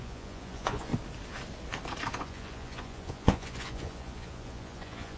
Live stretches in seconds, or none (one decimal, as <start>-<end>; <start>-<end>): 0.9-2.2